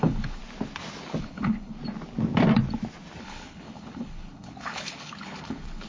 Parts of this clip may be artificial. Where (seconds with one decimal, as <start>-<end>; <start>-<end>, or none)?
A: 0.0-0.4; 1.2-1.8; 3.2-5.9